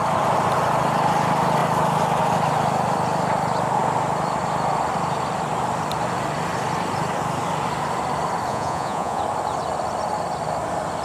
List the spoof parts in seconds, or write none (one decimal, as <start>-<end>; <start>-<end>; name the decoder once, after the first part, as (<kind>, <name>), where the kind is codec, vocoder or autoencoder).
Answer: 8.5-9.2 (vocoder, Vocos)